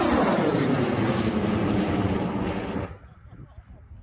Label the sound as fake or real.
real